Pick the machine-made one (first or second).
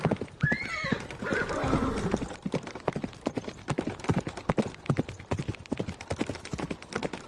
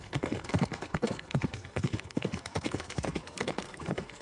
second